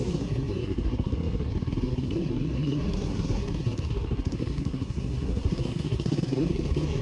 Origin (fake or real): fake